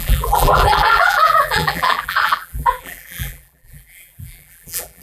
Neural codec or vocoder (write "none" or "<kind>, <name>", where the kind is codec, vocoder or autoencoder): vocoder, BigVGAN v2